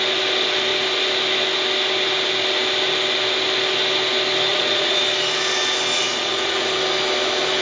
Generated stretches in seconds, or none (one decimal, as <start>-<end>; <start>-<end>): 4.5-5.0; 5.9-6.7